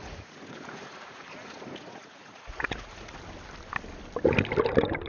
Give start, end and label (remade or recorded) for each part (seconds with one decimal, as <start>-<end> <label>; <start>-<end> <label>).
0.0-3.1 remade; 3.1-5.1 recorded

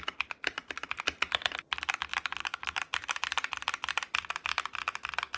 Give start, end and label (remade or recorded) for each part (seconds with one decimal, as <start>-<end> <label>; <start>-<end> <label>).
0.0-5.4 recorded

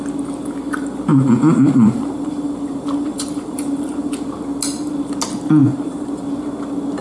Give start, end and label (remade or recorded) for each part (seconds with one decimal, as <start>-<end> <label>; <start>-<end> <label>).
0.0-1.1 recorded; 1.1-4.1 remade; 4.1-5.6 recorded; 5.6-6.1 remade; 6.1-7.0 recorded